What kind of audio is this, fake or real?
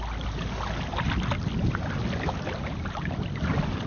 real